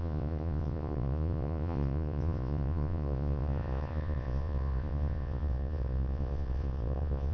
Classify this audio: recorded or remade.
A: remade